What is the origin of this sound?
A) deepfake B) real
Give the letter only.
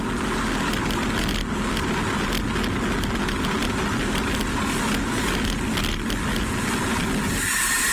B